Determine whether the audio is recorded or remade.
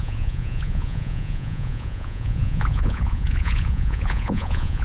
remade